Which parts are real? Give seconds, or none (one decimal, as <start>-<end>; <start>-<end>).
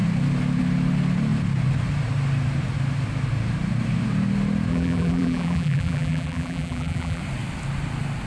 0.0-4.7; 7.2-8.3